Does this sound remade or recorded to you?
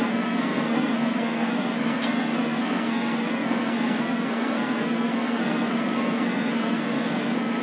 remade